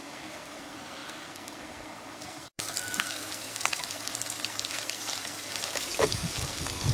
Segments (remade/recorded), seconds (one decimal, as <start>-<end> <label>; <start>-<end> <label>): 0.0-6.9 remade